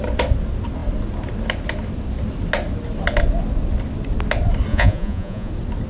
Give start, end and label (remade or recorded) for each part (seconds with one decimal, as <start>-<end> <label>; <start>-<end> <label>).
0.0-4.7 recorded; 4.7-5.5 remade; 5.5-5.9 recorded